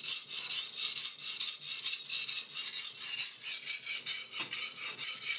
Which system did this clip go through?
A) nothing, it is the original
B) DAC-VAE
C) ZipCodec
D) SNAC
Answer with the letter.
A